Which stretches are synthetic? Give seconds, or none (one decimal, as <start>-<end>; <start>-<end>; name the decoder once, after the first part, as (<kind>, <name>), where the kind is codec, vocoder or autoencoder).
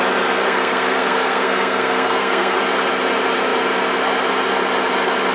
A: 0.4-2.6 (codec, SNAC)